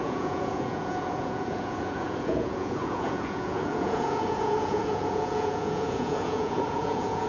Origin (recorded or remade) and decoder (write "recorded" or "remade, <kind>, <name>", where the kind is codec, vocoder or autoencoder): remade, vocoder, Vocos